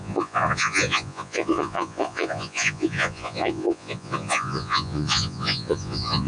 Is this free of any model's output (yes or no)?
no